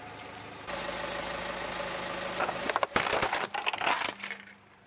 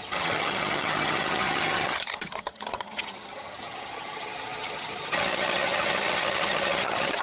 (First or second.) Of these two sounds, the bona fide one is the first